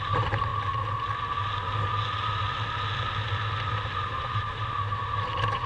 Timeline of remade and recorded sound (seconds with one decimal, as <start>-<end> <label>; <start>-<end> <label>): 0.0-0.5 remade; 0.5-3.9 recorded; 3.9-5.7 remade